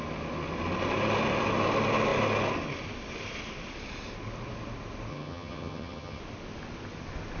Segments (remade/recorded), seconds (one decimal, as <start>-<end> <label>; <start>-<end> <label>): 0.0-5.1 recorded; 5.1-6.2 remade; 6.2-7.4 recorded